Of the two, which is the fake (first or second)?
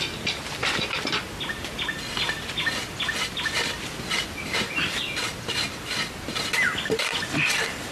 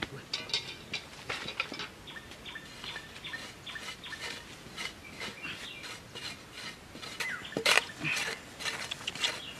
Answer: first